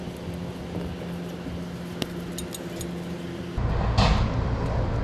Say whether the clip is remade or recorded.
recorded